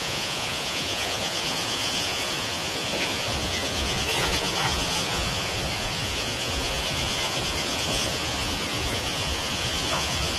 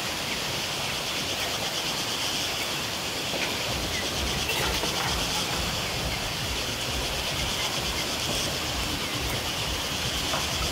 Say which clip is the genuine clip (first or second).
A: second